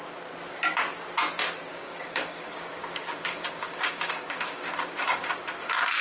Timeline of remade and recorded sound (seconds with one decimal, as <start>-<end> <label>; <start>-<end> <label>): 0.0-1.7 recorded; 1.7-5.3 remade; 5.3-6.0 recorded